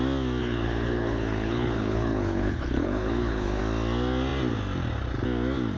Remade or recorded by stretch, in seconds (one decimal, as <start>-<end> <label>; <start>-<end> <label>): 0.0-0.4 recorded; 0.4-3.6 remade; 3.6-5.8 recorded